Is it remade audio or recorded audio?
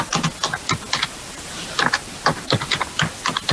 recorded